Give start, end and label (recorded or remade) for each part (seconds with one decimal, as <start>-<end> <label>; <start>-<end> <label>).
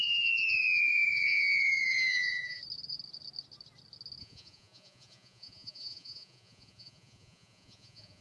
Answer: 0.0-2.6 remade; 2.6-4.2 recorded; 4.2-8.2 remade